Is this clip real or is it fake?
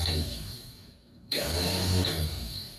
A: fake